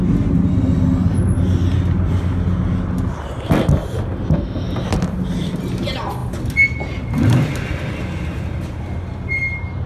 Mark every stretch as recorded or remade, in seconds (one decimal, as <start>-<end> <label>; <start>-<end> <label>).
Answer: 0.0-9.9 recorded